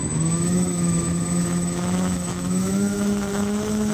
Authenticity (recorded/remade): remade